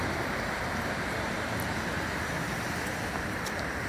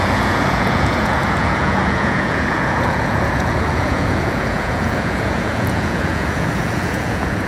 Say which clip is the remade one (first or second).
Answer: second